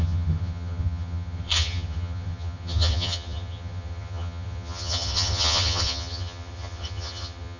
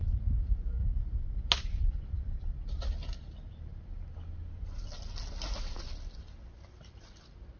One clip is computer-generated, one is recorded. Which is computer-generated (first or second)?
first